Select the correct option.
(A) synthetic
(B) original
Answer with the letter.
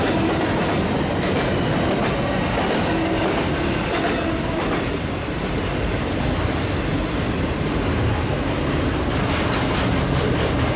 B